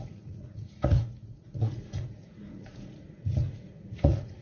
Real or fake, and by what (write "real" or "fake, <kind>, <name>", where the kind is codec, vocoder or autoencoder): fake, vocoder, Vocos